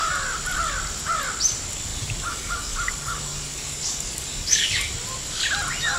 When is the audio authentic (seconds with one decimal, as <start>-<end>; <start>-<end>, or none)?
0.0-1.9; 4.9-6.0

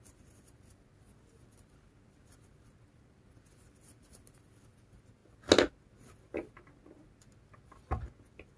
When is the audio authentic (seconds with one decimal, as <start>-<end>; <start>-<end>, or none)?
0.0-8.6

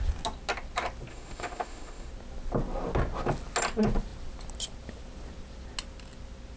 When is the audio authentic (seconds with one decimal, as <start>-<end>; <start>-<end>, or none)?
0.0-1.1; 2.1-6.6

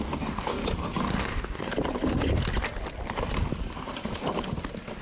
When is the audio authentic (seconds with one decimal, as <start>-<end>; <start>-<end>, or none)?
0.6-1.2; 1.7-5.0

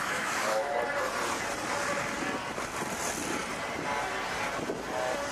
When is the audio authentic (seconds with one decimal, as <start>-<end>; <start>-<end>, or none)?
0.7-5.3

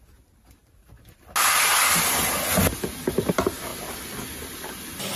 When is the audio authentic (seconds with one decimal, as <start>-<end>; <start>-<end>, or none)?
0.0-3.7; 4.7-5.2